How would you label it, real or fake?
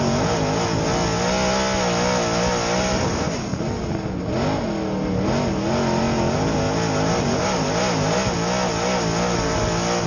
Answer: real